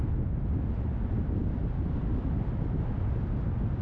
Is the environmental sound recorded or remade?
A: recorded